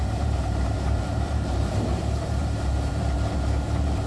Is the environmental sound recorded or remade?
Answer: remade